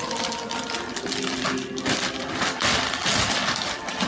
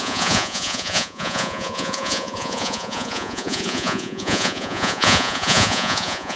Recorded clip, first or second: first